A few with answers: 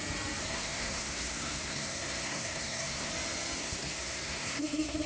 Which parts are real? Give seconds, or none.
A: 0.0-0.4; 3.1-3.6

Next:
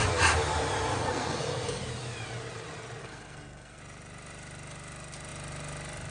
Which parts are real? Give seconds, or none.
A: 0.0-1.0; 1.8-3.0; 3.8-6.1

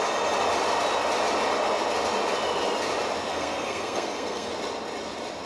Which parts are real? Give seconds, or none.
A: 0.0-3.3; 4.5-5.5

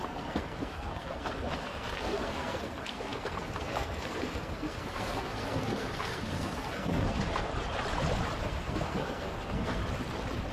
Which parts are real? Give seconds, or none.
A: 7.5-8.4; 9.8-10.5

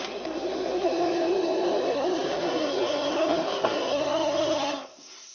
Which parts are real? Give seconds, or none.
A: none

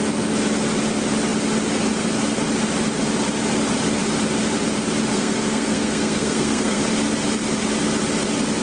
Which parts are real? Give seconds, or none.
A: 0.0-5.1; 6.8-8.6

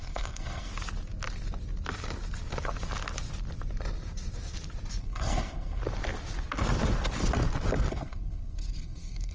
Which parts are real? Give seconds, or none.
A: 0.7-5.0; 5.8-7.9